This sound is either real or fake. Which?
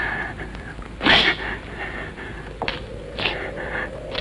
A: real